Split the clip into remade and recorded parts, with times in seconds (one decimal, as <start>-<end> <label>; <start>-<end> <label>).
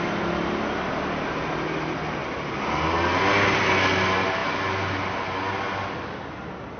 0.0-6.8 recorded